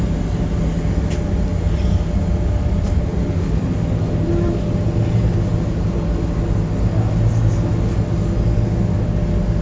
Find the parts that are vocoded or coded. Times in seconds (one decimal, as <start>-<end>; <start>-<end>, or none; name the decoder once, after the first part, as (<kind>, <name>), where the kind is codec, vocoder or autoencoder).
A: none